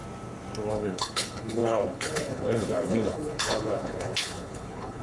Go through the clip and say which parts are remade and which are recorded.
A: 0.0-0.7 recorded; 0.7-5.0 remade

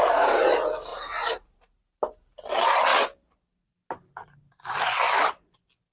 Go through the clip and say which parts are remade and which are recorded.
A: 0.0-0.9 recorded; 0.9-1.8 remade; 1.8-5.9 recorded

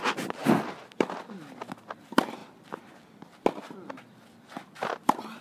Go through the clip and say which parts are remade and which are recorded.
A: 0.0-0.4 remade; 0.4-2.0 recorded; 2.0-2.4 remade; 2.4-3.6 recorded; 3.6-5.4 remade

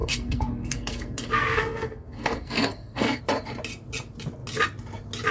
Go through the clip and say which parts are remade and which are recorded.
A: 0.0-3.2 remade; 3.2-5.3 recorded

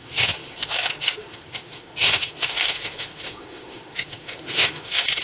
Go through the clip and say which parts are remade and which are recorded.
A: 0.0-5.2 remade

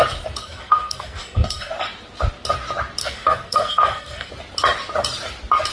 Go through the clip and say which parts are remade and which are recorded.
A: 0.0-0.4 recorded; 0.4-1.7 remade; 1.7-3.0 recorded; 3.0-4.3 remade; 4.3-5.7 recorded

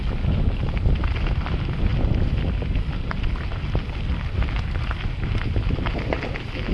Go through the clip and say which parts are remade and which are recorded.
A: 0.0-6.7 recorded

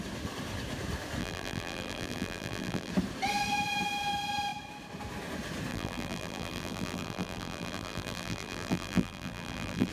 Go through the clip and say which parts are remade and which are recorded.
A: 0.0-1.2 recorded; 1.2-2.9 remade; 2.9-5.7 recorded; 5.7-9.9 remade